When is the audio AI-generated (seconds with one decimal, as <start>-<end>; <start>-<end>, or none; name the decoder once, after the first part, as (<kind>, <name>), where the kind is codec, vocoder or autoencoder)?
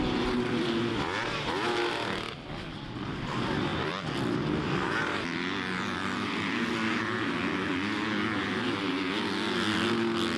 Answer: none